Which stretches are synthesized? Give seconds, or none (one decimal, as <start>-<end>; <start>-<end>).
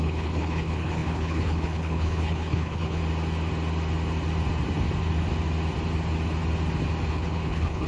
0.0-3.0; 7.1-7.9